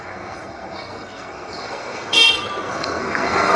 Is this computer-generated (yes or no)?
yes